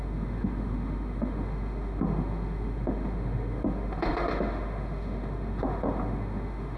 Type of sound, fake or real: fake